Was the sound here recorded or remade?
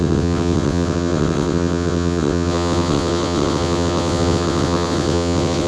remade